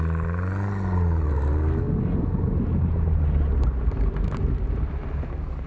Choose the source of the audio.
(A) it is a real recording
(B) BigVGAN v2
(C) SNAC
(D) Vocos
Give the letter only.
A